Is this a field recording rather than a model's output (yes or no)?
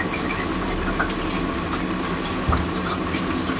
yes